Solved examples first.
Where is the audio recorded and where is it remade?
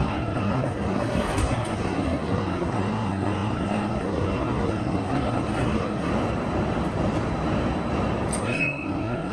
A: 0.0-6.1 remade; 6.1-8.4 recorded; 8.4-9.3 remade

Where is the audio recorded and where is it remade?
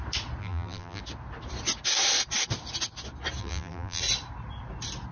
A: 0.0-0.4 recorded; 0.4-1.0 remade; 1.0-3.4 recorded; 3.4-4.0 remade; 4.0-5.1 recorded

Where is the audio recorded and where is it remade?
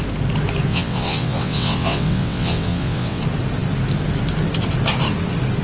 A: 0.0-0.7 recorded; 0.7-3.2 remade; 3.2-5.6 recorded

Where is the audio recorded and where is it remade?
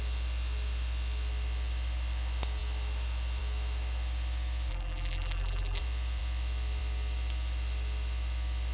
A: 0.0-4.7 recorded; 4.7-5.8 remade; 5.8-8.7 recorded